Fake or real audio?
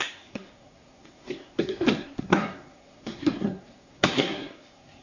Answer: fake